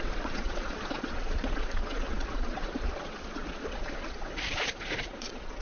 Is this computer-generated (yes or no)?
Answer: yes